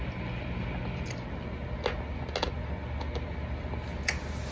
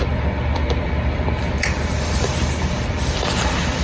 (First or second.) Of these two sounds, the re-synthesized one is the second